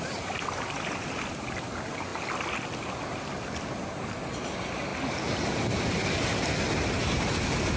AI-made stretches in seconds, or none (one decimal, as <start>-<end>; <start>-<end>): none